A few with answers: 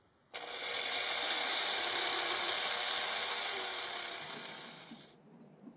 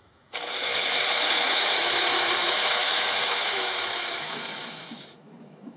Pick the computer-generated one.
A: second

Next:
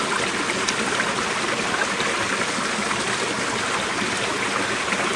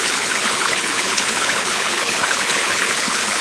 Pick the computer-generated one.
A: second